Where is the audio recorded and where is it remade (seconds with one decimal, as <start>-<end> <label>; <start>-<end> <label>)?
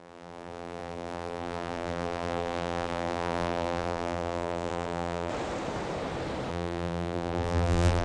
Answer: 0.0-5.3 remade; 5.3-6.5 recorded; 6.5-8.0 remade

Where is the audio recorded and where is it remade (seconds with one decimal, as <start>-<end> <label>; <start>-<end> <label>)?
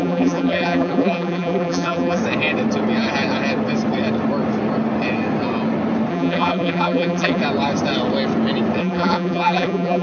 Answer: 0.0-2.2 remade; 2.2-6.1 recorded; 6.1-7.4 remade; 7.4-8.8 recorded; 8.8-10.0 remade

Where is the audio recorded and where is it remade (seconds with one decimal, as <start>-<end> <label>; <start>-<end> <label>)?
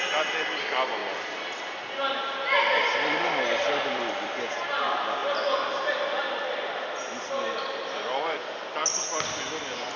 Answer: 0.0-1.0 remade; 1.0-2.6 recorded; 2.6-8.8 remade; 8.8-9.4 recorded; 9.4-10.0 remade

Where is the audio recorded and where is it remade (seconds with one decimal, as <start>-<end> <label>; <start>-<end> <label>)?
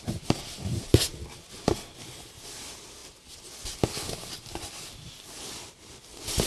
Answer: 0.0-6.5 recorded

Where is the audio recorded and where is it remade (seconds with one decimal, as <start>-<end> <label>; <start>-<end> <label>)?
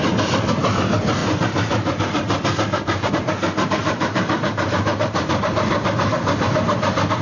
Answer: 0.0-1.2 recorded; 1.2-3.1 remade; 3.1-3.8 recorded; 3.8-5.7 remade; 5.7-7.2 recorded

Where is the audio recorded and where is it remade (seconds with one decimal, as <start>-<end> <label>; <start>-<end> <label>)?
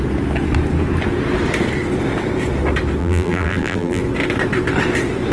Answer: 0.0-3.0 recorded; 3.0-4.0 remade; 4.0-5.3 recorded